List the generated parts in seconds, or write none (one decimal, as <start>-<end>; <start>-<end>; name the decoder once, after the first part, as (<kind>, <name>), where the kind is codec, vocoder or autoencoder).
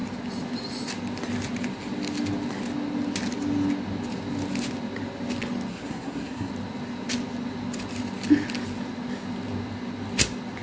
5.7-6.5 (codec, SNAC)